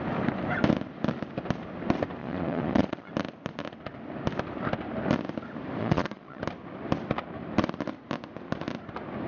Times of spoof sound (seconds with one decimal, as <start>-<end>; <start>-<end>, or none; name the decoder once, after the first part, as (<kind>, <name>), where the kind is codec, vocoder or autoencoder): 2.2-3.1 (vocoder, Vocos); 5.8-6.4